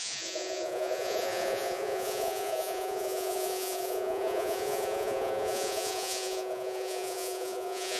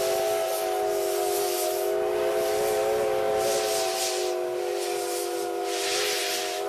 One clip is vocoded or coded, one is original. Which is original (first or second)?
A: second